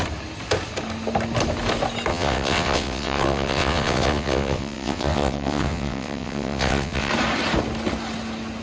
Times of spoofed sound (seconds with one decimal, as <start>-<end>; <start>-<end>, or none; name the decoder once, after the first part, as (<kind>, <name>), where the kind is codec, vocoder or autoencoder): 2.1-7.1 (vocoder, WaveNeXt)